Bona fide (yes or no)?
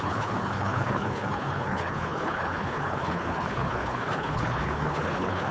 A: no